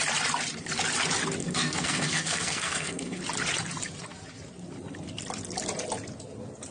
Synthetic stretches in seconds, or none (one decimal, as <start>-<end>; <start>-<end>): 1.4-3.2